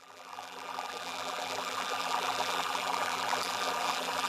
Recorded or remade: remade